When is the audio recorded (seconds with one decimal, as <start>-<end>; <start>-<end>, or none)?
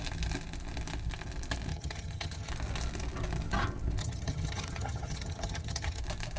0.0-1.7; 2.5-4.0; 6.0-6.4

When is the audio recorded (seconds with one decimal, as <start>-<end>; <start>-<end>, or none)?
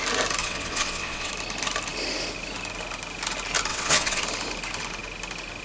0.0-0.4; 1.3-3.7; 4.2-5.6